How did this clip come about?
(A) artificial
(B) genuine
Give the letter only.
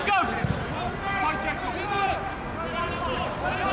B